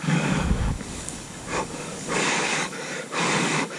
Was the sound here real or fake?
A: fake